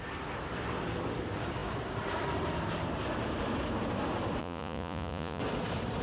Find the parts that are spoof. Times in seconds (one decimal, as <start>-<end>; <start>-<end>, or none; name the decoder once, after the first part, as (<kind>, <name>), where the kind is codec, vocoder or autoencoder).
4.4-5.4 (vocoder, Vocos)